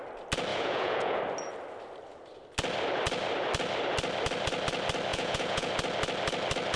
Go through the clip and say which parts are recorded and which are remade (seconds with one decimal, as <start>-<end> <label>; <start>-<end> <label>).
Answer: 0.0-0.5 recorded; 0.5-1.2 remade; 1.2-5.1 recorded; 5.1-5.7 remade; 5.7-6.8 recorded